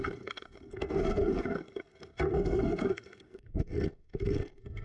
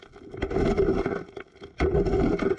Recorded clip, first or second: second